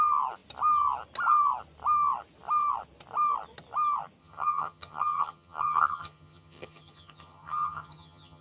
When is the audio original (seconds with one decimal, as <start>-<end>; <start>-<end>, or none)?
0.0-4.2